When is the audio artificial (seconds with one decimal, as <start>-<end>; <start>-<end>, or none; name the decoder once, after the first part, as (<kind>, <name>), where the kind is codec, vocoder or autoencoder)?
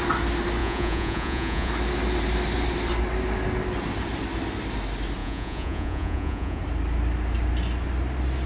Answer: 0.6-1.7 (vocoder, Vocos); 5.2-6.6